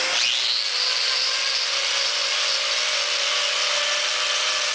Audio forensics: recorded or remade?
recorded